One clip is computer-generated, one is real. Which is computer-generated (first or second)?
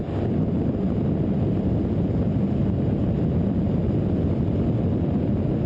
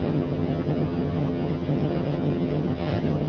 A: second